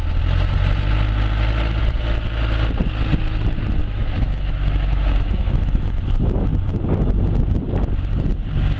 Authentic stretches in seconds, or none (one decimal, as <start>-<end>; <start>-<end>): 0.0-3.8; 6.0-8.8